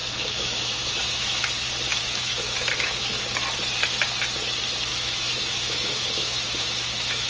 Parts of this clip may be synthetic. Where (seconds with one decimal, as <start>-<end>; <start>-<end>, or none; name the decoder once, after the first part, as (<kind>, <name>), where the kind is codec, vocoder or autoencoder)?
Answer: 0.0-1.5 (autoencoder, DAC-VAE); 1.9-3.2; 4.9-7.3